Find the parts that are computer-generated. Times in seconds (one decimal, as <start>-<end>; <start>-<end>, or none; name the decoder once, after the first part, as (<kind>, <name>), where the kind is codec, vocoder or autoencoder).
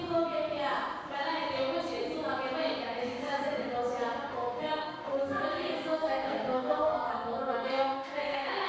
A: 3.0-3.8 (codec, SNAC); 4.3-8.7